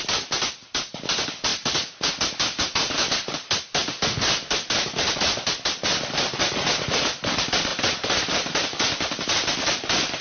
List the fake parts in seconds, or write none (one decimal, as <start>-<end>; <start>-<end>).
none